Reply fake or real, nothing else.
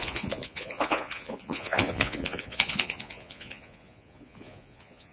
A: fake